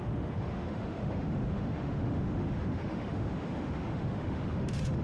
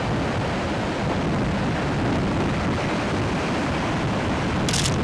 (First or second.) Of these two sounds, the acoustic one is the second